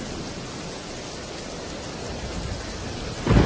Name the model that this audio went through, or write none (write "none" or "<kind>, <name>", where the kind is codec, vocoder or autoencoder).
none